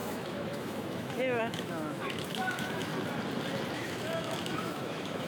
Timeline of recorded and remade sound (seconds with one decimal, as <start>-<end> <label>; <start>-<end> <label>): 0.0-2.9 remade; 2.9-3.7 recorded; 3.7-5.3 remade

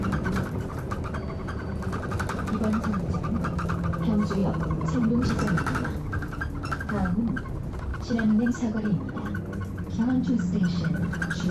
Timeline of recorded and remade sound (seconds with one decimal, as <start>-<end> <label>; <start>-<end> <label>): 0.0-4.4 recorded; 4.4-5.3 remade; 5.3-11.5 recorded

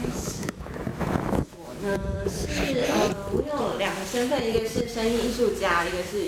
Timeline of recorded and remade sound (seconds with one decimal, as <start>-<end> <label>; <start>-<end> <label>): 0.0-2.8 remade; 2.8-3.6 recorded; 3.6-4.0 remade; 4.0-5.8 recorded; 5.8-6.3 remade